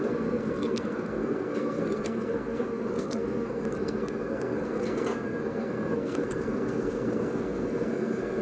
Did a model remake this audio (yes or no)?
yes